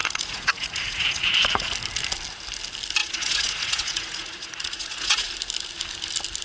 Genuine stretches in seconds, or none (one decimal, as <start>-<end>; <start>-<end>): 1.7-3.0; 5.3-6.4